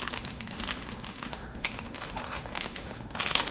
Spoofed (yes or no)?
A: yes